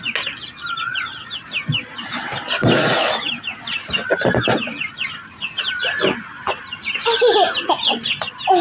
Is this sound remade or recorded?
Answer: recorded